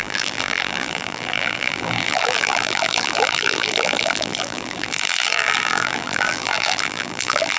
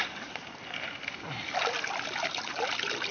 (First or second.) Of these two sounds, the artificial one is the first